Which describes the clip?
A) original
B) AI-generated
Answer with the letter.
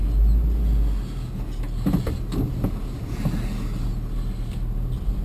A